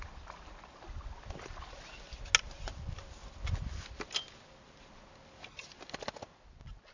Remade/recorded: recorded